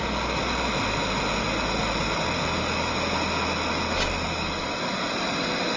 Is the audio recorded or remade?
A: recorded